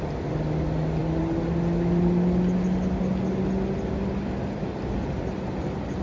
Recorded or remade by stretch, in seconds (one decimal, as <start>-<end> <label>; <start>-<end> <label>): 0.0-6.0 recorded